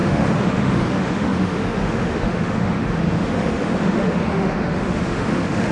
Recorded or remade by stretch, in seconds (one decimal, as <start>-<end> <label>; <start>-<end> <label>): 0.0-5.7 remade